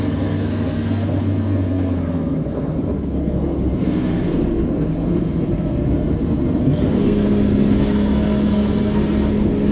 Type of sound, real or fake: fake